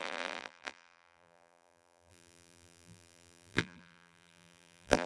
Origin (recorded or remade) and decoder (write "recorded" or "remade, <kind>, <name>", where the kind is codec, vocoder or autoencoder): remade, vocoder, BigVGAN v2